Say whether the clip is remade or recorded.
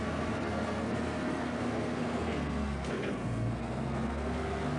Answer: remade